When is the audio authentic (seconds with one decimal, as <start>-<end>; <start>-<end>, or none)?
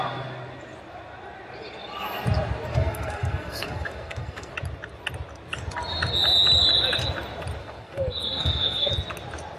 0.0-2.7; 4.5-7.6; 8.9-9.6